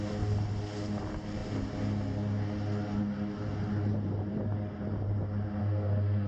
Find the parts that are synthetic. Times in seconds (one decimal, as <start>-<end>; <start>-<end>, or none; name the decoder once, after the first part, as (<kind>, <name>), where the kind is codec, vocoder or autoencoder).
5.6-6.3 (codec, SNAC)